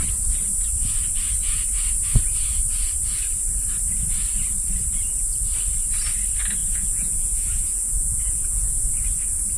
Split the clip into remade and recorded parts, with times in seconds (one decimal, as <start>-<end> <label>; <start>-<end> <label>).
0.0-6.6 recorded; 6.6-8.9 remade; 8.9-9.6 recorded